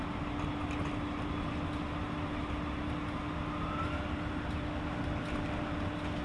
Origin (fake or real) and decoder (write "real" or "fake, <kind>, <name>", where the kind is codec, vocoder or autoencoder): real